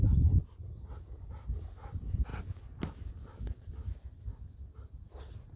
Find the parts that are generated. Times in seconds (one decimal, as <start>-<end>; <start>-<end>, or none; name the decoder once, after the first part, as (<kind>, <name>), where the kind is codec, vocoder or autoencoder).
none